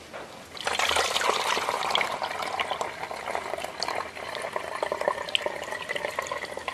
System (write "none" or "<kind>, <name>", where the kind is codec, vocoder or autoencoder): none